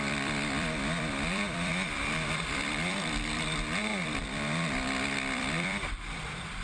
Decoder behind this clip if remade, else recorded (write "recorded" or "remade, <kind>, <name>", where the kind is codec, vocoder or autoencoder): remade, vocoder, BigVGAN v2